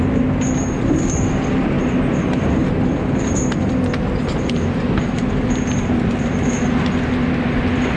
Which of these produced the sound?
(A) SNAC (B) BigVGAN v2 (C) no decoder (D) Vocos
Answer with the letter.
C